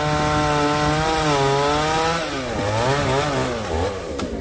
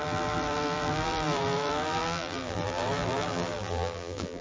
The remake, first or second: second